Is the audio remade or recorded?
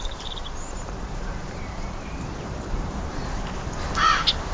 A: remade